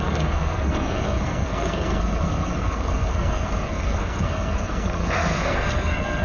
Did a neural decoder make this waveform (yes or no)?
yes